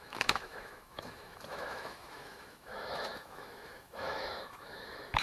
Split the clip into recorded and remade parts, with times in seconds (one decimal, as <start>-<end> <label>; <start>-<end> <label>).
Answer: 0.0-5.2 remade